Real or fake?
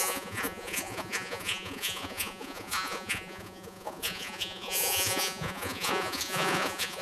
fake